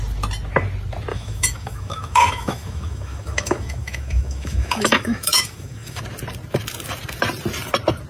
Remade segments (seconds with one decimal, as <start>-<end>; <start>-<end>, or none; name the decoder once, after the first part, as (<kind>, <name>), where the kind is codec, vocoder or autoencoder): 1.1-6.0 (autoencoder, DAC-VAE)

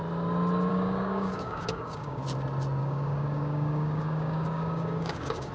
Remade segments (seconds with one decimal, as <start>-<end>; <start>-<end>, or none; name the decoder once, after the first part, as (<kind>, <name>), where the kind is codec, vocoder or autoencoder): 0.7-2.2 (codec, DAC); 2.8-5.5

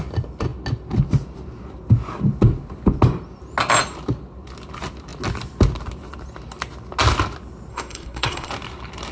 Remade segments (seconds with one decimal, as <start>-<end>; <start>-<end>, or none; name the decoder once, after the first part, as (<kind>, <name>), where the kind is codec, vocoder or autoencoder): 7.7-8.5 (codec, SNAC)

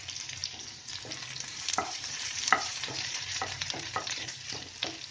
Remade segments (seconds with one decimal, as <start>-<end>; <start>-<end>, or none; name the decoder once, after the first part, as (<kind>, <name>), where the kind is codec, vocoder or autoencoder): 0.4-0.9 (vocoder, BigVGAN v2); 1.5-4.6

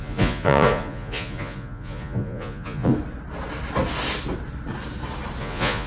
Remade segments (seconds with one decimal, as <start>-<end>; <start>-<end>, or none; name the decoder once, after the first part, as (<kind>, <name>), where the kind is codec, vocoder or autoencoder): 0.0-2.9 (vocoder, Vocos); 5.4-5.9